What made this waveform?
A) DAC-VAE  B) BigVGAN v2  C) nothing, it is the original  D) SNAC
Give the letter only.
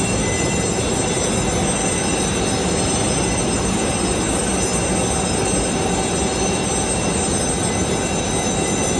C